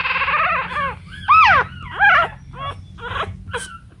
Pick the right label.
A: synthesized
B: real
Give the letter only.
B